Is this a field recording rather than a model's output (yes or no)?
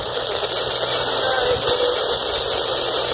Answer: yes